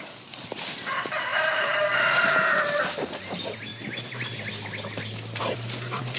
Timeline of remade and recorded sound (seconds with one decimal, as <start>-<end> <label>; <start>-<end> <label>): 0.0-3.7 remade; 3.7-5.4 recorded; 5.4-6.2 remade